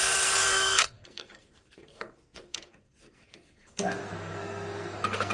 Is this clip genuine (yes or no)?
no